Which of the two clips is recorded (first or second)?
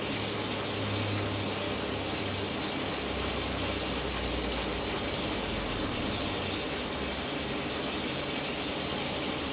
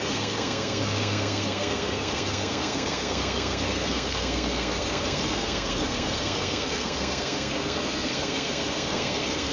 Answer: first